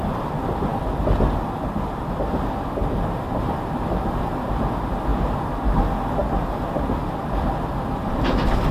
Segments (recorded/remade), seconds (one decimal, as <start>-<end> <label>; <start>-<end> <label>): 0.0-2.8 recorded; 2.8-4.3 remade; 4.3-8.7 recorded